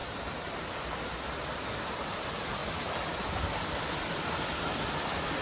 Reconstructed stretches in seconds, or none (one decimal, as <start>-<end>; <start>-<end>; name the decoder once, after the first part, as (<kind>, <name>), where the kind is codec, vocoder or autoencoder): none

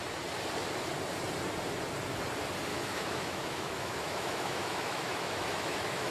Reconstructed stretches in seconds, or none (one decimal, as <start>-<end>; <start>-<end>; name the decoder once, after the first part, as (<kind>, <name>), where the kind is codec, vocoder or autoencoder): 2.7-6.1 (autoencoder, DAC-VAE)

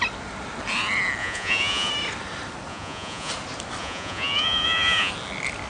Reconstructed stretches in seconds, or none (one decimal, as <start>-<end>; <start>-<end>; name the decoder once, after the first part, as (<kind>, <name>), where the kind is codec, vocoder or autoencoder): 1.2-1.9 (vocoder, Vocos); 2.7-3.3; 3.8-5.1

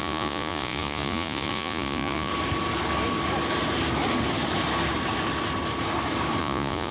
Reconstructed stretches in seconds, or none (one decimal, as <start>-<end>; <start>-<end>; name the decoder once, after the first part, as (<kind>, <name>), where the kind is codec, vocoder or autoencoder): 0.0-2.3 (vocoder, Vocos); 6.4-6.9

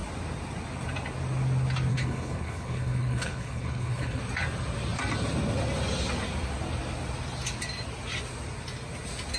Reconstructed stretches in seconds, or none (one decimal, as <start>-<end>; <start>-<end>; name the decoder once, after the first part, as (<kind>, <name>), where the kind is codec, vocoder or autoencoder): 1.9-4.2 (codec, HILCodec)

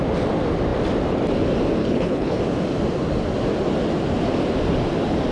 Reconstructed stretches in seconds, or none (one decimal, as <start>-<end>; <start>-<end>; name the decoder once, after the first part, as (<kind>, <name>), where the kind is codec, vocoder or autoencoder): 1.8-2.4 (codec, HILCodec)